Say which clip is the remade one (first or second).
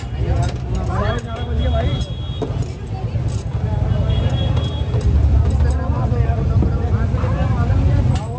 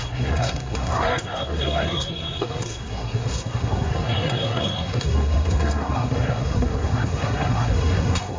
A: second